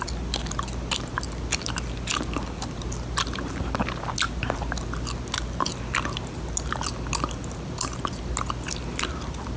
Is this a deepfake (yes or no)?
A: no